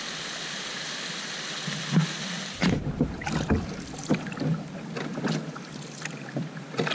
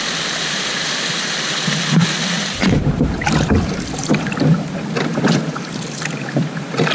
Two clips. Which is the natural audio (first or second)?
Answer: first